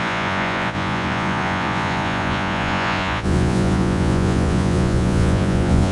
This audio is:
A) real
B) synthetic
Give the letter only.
B